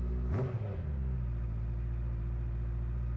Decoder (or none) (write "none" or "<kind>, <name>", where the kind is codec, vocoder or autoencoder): none